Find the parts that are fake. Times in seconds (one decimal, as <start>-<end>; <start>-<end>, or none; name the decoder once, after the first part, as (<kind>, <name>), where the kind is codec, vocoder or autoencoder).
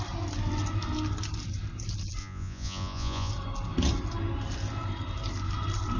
2.2-3.3 (vocoder, Vocos)